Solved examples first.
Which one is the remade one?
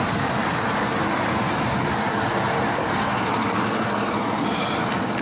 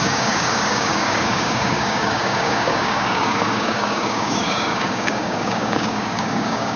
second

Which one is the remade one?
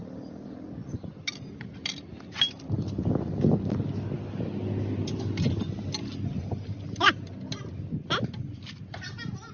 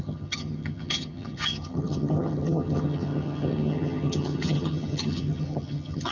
second